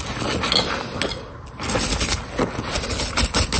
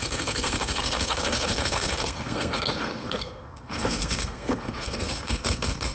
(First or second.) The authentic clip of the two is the first